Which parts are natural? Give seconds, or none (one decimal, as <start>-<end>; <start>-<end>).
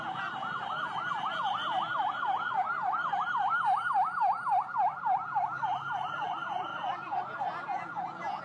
1.3-2.0; 6.7-8.4